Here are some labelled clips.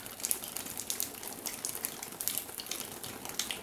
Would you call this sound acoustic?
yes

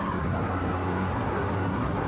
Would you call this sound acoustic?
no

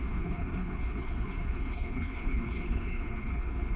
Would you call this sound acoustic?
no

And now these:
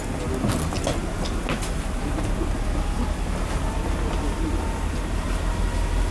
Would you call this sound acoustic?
yes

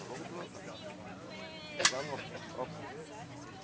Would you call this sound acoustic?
yes